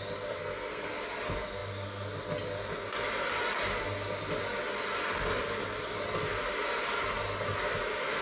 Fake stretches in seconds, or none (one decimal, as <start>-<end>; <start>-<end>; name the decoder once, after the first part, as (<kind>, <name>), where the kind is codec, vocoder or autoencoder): 0.4-0.9 (codec, SNAC)